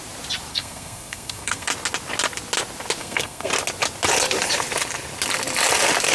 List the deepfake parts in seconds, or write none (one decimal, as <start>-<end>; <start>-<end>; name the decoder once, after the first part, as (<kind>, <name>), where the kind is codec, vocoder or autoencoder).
0.5-1.7 (codec, SNAC); 3.0-3.5